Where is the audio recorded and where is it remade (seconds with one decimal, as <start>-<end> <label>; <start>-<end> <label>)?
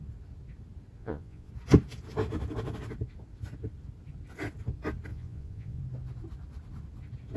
0.0-1.0 recorded; 1.0-1.5 remade; 1.5-5.1 recorded; 5.1-5.8 remade; 5.8-7.4 recorded